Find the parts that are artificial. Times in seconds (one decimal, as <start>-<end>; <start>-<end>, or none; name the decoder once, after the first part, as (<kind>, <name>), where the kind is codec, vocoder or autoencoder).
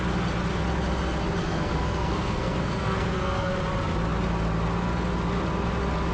1.4-3.5 (codec, SNAC)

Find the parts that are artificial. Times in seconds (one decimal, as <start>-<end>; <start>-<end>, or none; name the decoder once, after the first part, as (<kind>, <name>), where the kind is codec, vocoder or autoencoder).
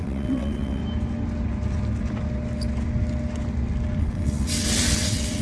0.0-0.8 (vocoder, WaveNeXt); 4.0-5.4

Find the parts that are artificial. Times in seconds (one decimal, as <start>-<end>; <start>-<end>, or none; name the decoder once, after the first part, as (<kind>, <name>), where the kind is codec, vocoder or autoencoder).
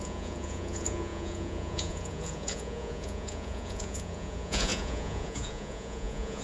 0.0-6.4 (vocoder, Vocos)